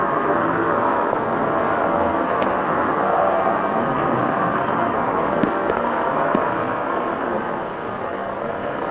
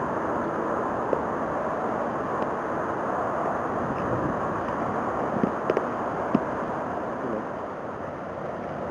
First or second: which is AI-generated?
first